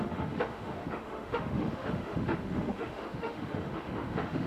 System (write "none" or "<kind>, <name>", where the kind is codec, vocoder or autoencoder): autoencoder, DAC-VAE